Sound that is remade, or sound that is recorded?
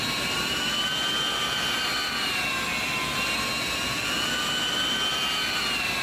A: recorded